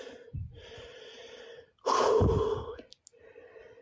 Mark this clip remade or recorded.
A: recorded